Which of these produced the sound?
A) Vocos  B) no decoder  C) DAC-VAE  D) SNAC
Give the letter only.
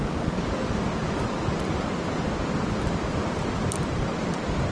B